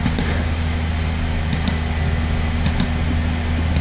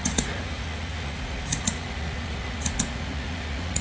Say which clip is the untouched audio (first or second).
first